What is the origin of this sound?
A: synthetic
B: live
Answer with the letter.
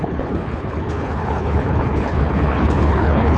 A